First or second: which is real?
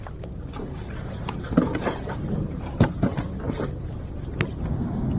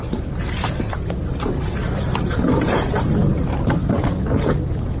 second